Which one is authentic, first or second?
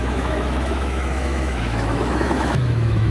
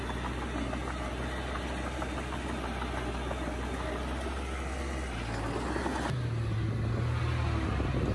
second